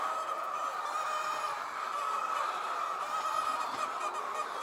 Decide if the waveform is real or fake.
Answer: real